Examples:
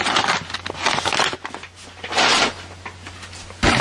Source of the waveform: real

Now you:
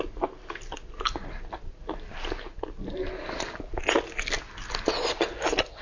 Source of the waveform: real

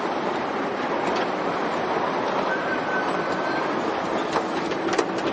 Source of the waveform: real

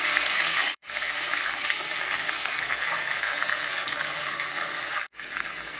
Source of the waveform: fake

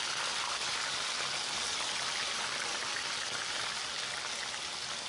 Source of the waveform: real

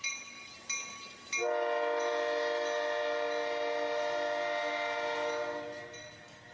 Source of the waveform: real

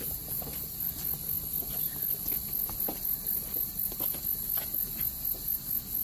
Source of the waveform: real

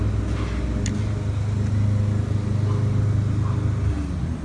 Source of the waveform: real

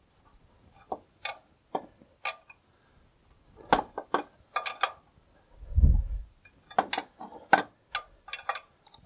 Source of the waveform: real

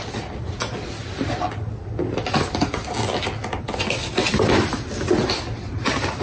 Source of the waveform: real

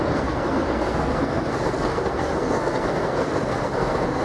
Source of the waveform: fake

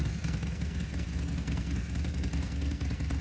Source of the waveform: fake